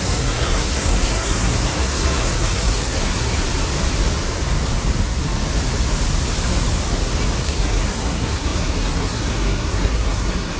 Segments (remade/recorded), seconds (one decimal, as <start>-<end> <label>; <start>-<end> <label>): 0.0-3.3 remade; 3.3-7.4 recorded; 7.4-10.6 remade